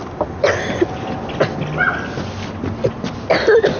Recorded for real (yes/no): yes